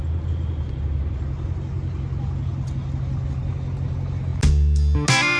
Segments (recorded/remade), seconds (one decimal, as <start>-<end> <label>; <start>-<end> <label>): 0.0-5.4 recorded